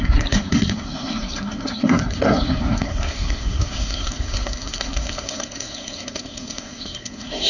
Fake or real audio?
fake